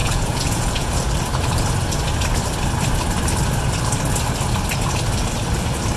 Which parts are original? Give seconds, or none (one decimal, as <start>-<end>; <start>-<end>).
0.9-6.0